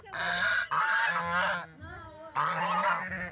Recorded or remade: recorded